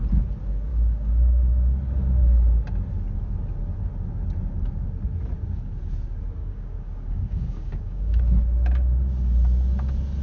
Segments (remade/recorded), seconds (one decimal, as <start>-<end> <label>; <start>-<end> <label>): 0.0-0.7 recorded; 0.7-1.5 remade; 1.5-6.4 recorded; 6.4-8.2 remade; 8.2-10.2 recorded